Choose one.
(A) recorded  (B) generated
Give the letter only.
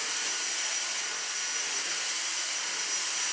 A